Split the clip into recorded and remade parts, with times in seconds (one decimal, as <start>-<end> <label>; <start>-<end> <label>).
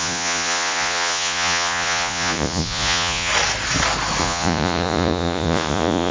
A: 0.0-3.3 remade; 3.3-4.2 recorded; 4.2-6.1 remade